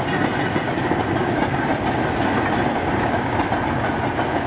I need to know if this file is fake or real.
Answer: real